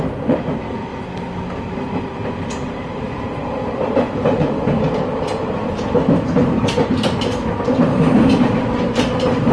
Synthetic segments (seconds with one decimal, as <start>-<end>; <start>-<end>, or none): 0.0-0.9; 1.6-9.5